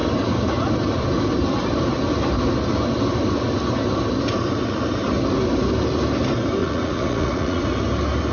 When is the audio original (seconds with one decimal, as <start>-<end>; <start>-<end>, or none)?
0.0-6.6; 7.6-8.3